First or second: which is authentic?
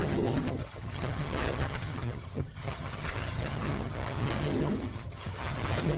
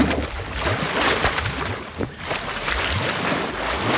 second